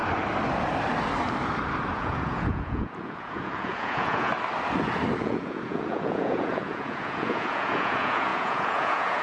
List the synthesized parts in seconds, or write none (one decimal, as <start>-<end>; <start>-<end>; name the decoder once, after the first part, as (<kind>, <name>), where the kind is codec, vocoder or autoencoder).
1.9-4.3 (vocoder, Vocos); 5.2-9.2